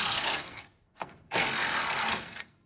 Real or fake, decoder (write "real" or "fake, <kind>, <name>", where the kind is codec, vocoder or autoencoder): fake, codec, SNAC